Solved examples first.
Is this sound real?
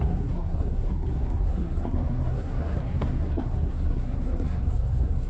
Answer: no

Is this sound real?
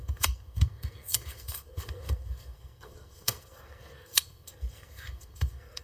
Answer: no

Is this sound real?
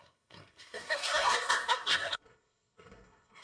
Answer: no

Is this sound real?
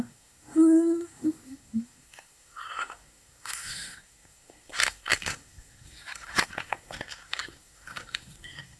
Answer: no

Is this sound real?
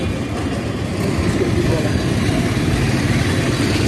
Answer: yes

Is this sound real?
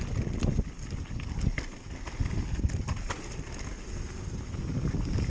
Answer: yes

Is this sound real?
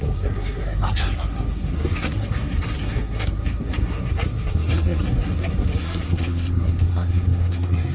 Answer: no